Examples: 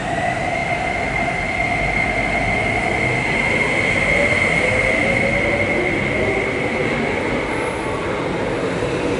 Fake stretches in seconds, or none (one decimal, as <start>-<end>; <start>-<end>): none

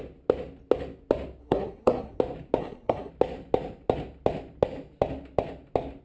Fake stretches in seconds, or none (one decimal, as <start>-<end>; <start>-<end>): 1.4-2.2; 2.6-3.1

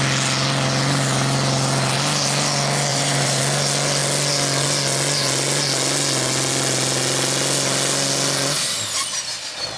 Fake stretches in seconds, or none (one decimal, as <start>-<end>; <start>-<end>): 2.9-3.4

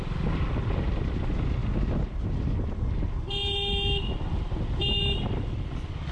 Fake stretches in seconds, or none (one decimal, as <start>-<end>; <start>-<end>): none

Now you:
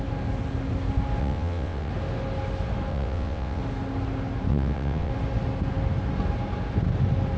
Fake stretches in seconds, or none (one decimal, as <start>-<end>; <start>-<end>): 1.2-1.9; 2.9-3.6; 4.5-5.1

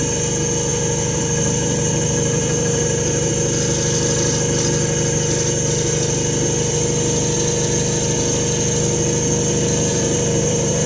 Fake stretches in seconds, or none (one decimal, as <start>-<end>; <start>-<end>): 0.7-3.3; 9.9-10.9

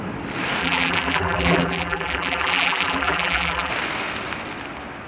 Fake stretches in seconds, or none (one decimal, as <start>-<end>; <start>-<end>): 0.6-3.7

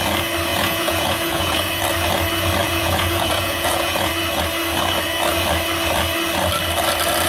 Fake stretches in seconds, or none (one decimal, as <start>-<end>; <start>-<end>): 0.5-1.7; 2.6-4.1